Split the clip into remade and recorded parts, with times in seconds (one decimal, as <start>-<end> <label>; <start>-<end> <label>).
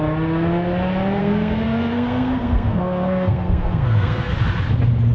0.0-1.2 recorded; 1.2-4.3 remade; 4.3-5.1 recorded